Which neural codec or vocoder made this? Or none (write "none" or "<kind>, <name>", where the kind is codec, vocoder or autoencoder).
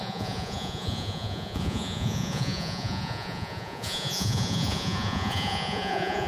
vocoder, Vocos